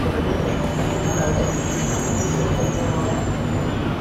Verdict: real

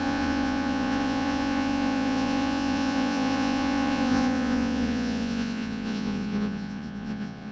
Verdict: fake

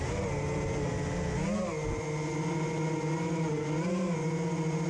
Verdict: real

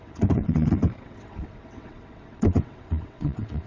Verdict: fake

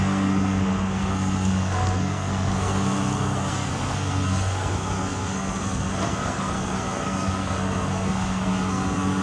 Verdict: fake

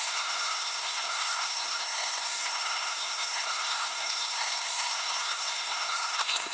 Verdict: fake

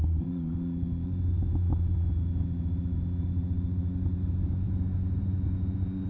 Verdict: fake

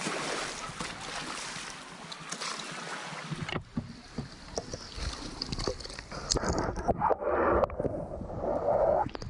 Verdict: real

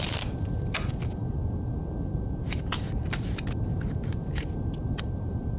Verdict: fake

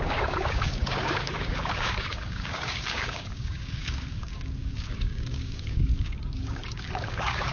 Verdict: fake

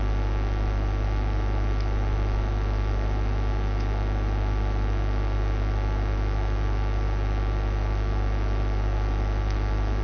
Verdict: fake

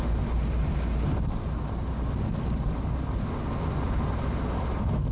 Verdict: real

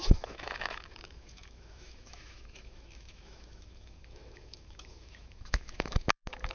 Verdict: fake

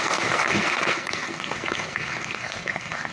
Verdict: fake